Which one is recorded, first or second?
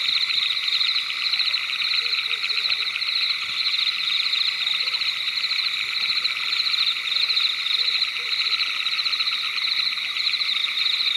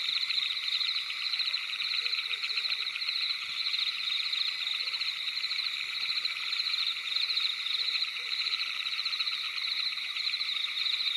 first